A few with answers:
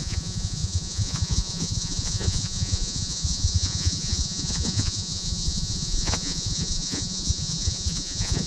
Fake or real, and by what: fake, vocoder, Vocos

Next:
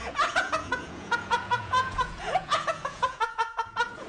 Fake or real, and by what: fake, vocoder, Vocos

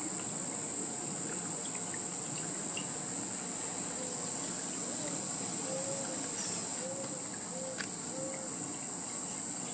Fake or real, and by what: real